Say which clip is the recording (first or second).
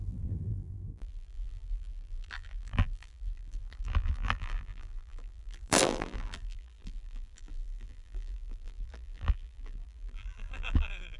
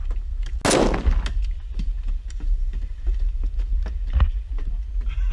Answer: second